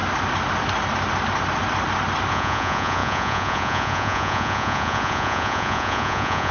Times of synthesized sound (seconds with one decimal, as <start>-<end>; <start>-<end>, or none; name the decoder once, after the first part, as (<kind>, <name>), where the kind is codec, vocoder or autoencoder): 2.3-6.5 (vocoder, Vocos)